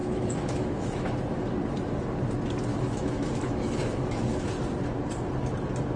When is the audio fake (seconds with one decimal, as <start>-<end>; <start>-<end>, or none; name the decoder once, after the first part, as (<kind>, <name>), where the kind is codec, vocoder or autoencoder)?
0.0-1.1 (autoencoder, DAC-VAE); 2.7-4.5

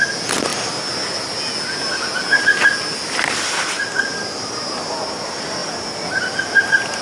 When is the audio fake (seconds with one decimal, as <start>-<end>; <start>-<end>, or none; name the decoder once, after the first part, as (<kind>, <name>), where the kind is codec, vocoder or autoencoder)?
none

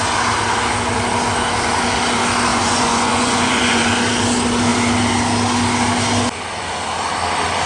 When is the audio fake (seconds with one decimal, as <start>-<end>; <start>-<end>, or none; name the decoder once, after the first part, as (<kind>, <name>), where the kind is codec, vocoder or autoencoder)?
2.5-3.9 (vocoder, Vocos)

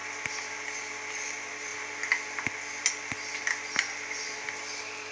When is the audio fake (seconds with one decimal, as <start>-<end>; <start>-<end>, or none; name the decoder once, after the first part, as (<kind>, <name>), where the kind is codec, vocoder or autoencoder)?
none

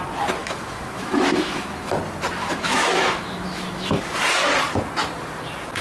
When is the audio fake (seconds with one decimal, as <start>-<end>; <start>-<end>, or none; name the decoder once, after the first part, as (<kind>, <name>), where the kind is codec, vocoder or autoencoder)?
0.4-1.9 (autoencoder, DAC-VAE); 2.4-4.0

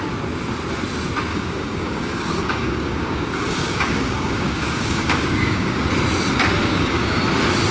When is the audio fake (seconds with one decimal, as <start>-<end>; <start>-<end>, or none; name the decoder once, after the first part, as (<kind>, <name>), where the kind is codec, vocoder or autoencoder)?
1.3-5.9 (codec, DAC); 6.6-7.2

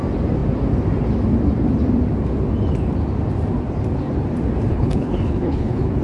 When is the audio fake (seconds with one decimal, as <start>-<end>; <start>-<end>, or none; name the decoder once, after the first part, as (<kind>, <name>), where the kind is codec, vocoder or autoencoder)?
4.7-6.0 (codec, HILCodec)